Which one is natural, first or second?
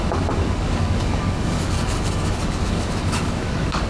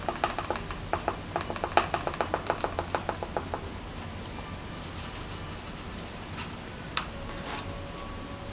second